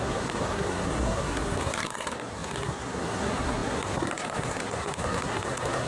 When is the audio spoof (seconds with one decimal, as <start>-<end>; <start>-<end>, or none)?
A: 0.0-5.9